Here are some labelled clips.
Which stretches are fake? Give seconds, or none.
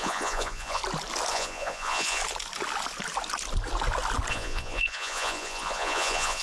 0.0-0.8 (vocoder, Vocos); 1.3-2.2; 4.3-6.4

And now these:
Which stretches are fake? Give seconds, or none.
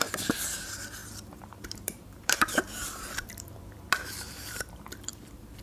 0.0-5.6 (vocoder, BigVGAN v2)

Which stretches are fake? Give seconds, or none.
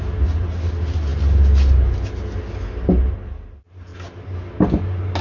none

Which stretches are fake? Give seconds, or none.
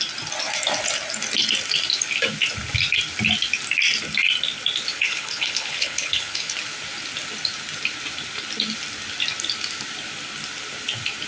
4.9-6.6 (codec, HILCodec)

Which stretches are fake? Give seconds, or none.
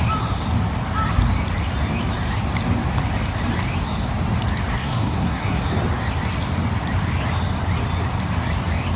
4.7-5.6 (codec, SNAC)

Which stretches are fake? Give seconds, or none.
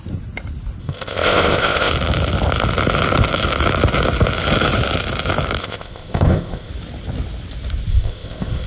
0.8-1.9 (codec, ZipCodec); 5.6-6.7; 7.9-8.7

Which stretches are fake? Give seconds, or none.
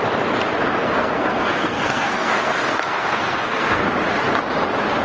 0.8-3.8 (codec, SNAC)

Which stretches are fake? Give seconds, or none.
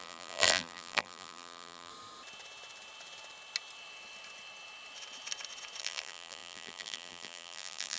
0.0-1.9 (vocoder, BigVGAN v2); 5.8-8.0